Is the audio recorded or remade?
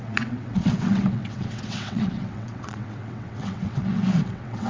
remade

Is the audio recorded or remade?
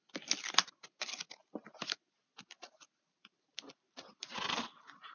recorded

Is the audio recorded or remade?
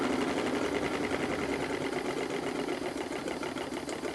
recorded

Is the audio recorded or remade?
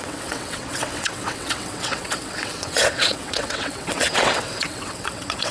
remade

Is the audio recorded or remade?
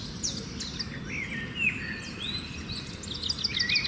recorded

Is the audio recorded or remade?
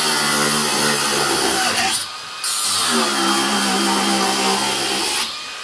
recorded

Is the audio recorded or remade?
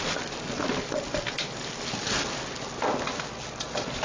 recorded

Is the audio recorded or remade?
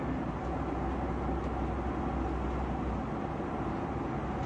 recorded